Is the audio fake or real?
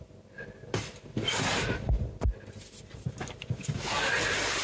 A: real